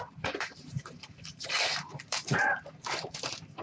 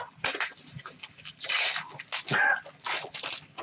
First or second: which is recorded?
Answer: second